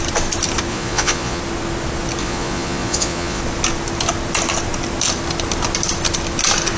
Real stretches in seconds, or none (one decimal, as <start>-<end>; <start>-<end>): 0.0-0.7; 1.4-2.2; 3.4-6.8